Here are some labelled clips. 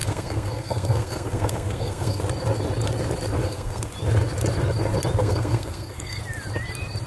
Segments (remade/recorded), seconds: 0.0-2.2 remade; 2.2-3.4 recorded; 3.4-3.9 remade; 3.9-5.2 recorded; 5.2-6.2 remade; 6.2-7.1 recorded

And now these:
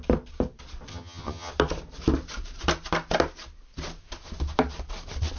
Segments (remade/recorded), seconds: 0.0-0.9 recorded; 0.9-1.5 remade; 1.5-5.4 recorded

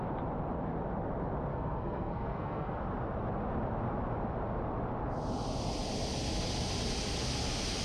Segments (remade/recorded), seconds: 0.0-1.5 recorded; 1.5-2.8 remade; 2.8-7.8 recorded

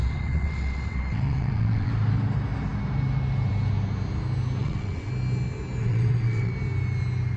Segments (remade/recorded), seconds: 0.0-1.9 remade; 1.9-4.6 recorded; 4.6-5.1 remade; 5.1-5.8 recorded; 5.8-6.5 remade; 6.5-7.4 recorded

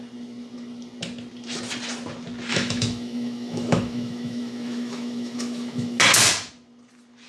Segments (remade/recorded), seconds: 0.0-2.5 recorded; 2.5-6.0 remade; 6.0-7.3 recorded